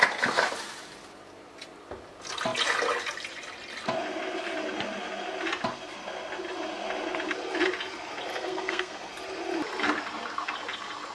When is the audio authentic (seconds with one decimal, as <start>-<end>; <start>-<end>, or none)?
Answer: 0.0-8.3; 9.1-11.1

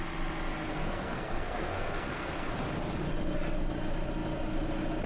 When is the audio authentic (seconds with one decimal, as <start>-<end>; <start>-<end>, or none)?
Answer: 0.0-0.7; 2.5-5.1